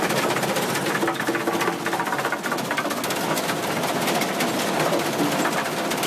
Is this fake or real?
real